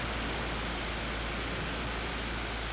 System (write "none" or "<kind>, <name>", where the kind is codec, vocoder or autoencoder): none